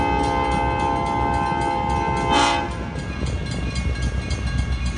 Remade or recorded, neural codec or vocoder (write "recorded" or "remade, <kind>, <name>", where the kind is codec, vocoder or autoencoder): recorded